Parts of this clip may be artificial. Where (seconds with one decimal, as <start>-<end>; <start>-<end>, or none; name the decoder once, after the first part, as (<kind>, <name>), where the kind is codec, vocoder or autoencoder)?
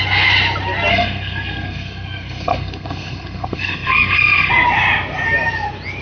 0.9-4.5 (codec, SNAC)